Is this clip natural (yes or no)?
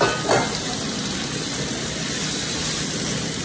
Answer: yes